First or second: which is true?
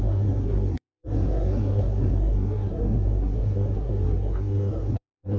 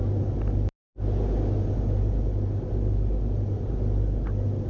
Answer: second